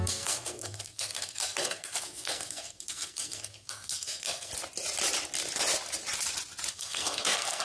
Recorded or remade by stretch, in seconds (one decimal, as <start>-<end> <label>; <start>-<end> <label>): 0.0-4.5 remade; 4.5-6.7 recorded; 6.7-7.6 remade